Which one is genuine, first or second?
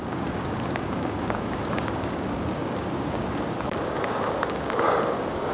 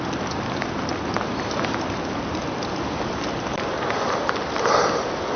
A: second